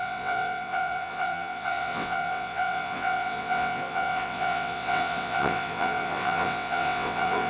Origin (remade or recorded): remade